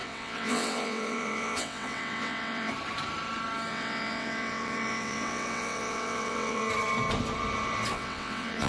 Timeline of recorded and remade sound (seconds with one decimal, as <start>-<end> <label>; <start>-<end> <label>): 0.0-2.7 remade; 2.7-3.7 recorded; 3.7-6.6 remade; 6.6-7.9 recorded; 7.9-8.7 remade